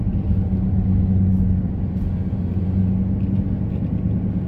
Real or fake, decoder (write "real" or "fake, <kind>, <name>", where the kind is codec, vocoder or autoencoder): real